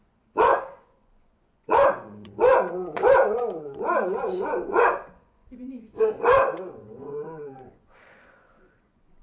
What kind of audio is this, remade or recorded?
remade